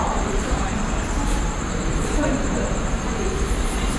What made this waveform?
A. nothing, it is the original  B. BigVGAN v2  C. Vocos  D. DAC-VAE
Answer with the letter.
B